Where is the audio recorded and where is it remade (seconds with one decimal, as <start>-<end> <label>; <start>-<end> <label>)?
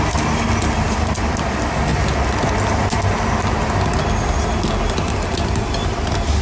0.0-6.4 recorded